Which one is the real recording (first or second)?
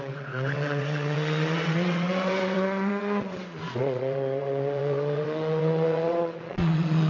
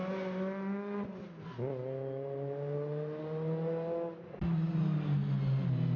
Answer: second